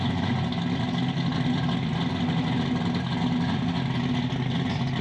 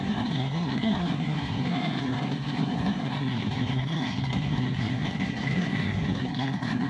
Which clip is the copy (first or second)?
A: second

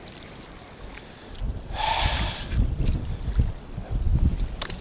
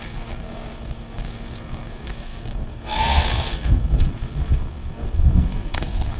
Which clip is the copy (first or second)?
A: second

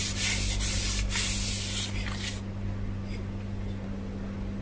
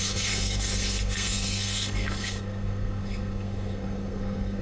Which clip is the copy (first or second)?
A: second